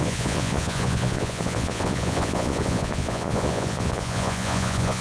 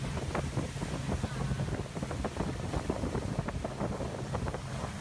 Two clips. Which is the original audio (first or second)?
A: second